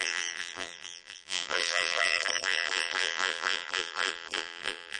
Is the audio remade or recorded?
remade